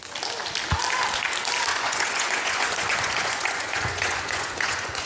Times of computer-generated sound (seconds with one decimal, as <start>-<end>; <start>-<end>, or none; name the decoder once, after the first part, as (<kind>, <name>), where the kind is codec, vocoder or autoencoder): 1.7-5.1 (vocoder, Vocos)